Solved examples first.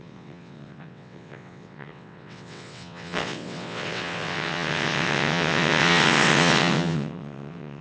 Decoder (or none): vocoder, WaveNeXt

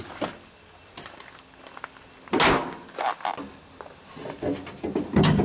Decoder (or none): none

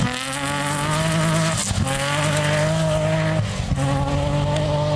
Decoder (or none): none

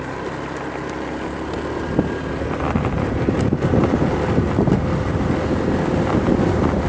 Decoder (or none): none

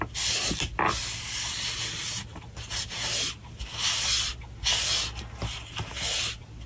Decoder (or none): none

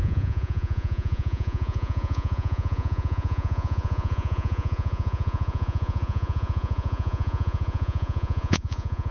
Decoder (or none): vocoder, Vocos